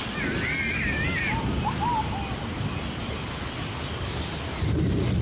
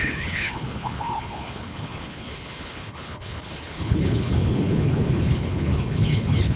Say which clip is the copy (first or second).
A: second